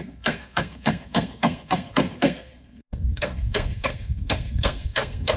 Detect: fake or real fake